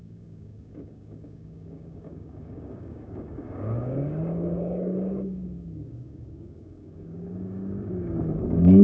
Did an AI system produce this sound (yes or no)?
yes